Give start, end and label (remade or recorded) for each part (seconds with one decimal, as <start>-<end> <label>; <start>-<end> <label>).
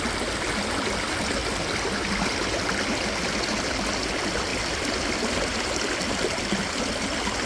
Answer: 0.0-7.5 recorded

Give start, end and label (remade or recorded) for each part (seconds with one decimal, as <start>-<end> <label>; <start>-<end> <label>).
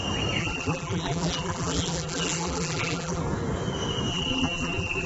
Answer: 0.0-0.4 recorded; 0.4-3.2 remade; 3.2-4.1 recorded; 4.1-5.1 remade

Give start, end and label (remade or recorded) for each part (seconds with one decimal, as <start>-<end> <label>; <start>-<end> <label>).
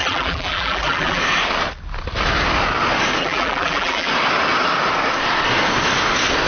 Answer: 0.0-1.2 remade; 1.2-3.2 recorded; 3.2-4.1 remade; 4.1-6.5 recorded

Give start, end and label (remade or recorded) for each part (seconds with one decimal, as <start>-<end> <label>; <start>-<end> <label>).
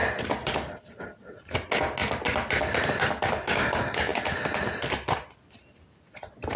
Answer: 0.0-1.0 remade; 1.0-6.6 recorded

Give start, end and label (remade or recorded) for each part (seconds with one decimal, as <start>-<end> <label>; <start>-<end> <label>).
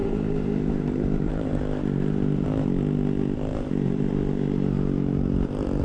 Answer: 0.0-1.6 remade; 1.6-3.5 recorded; 3.5-4.1 remade; 4.1-5.8 recorded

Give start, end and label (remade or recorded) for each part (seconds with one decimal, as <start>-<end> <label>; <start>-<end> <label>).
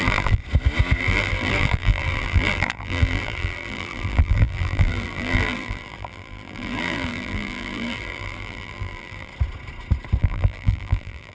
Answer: 0.0-0.4 remade; 0.4-1.0 recorded; 1.0-9.3 remade; 9.3-10.2 recorded; 10.2-11.3 remade